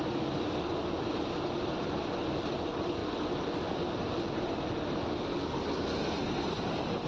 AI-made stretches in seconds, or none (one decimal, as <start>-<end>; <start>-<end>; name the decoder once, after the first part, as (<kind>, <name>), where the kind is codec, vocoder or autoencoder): none